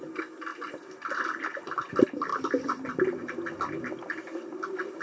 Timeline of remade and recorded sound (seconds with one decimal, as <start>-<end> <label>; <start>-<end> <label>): 0.0-5.0 recorded